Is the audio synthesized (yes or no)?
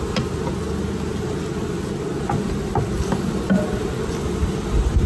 no